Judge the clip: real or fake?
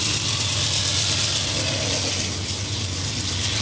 real